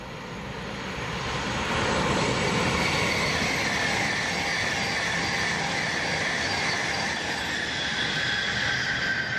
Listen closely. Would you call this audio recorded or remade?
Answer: recorded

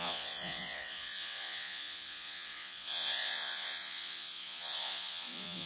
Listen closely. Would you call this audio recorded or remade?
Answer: remade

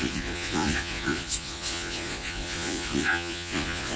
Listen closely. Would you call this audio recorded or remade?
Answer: remade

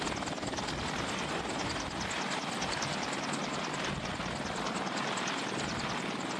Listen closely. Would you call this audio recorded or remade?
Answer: recorded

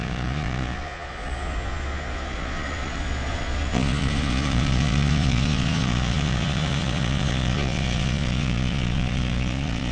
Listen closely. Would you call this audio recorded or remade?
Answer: remade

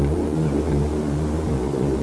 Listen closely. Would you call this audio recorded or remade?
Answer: remade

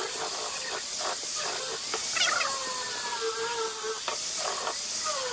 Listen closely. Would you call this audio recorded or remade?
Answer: recorded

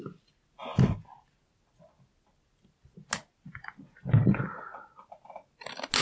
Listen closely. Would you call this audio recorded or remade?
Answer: recorded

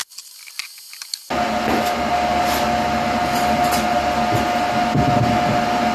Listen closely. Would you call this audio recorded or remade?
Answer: recorded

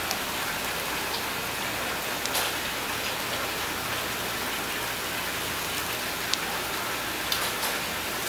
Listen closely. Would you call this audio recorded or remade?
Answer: recorded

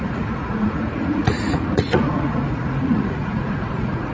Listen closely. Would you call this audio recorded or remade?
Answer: remade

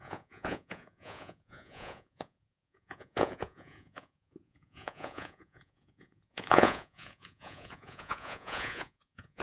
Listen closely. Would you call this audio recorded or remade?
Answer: remade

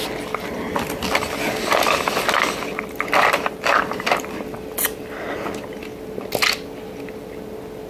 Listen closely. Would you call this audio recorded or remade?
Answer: recorded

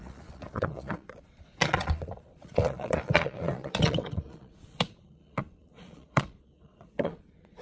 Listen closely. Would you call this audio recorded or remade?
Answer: remade